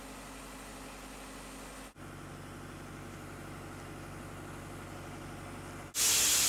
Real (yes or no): yes